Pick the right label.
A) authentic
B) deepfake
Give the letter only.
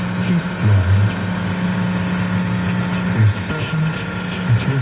A